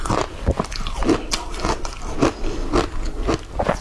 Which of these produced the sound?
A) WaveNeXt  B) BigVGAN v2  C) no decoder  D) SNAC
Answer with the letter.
C